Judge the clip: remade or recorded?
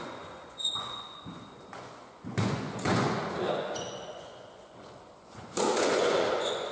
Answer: remade